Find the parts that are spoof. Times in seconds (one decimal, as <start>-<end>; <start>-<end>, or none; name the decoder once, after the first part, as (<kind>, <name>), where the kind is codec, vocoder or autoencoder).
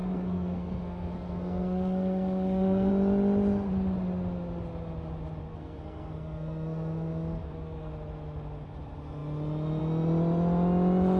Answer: 0.0-2.9 (codec, SNAC); 5.5-7.9